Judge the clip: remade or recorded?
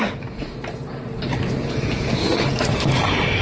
remade